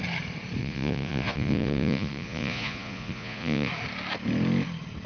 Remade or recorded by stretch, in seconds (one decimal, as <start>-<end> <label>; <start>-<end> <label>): 0.0-0.6 recorded; 0.6-3.7 remade; 3.7-5.1 recorded